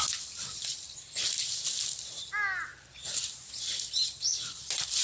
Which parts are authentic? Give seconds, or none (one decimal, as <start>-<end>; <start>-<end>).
0.0-5.0